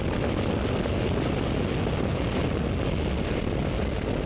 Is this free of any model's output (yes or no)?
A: yes